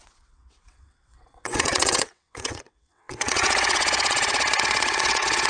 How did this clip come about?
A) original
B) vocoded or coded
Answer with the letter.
B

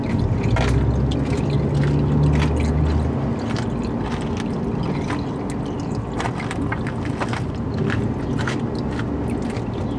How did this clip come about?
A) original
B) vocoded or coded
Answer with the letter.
A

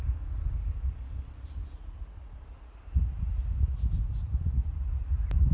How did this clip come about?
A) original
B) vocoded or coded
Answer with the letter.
A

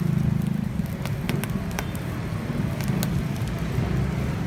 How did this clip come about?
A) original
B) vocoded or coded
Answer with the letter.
A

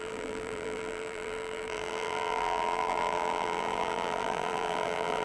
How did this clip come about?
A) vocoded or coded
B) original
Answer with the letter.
A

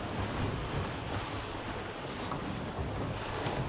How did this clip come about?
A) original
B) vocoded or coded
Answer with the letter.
A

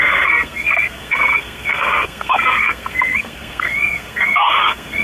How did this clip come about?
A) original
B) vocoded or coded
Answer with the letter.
B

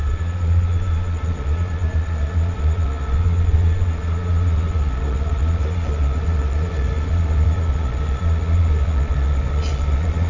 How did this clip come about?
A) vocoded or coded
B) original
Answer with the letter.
A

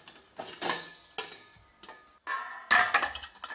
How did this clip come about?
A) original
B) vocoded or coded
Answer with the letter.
A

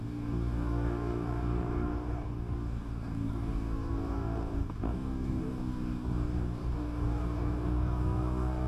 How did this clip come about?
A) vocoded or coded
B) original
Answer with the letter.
A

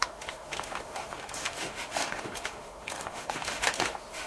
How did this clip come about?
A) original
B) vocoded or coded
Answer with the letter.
B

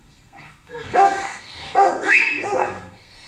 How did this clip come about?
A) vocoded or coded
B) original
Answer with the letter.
A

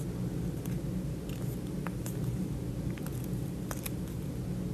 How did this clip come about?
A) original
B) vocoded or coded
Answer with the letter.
A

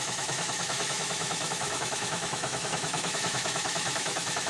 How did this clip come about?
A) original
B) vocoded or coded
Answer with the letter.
B